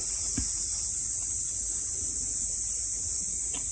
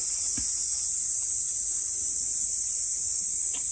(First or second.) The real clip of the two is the second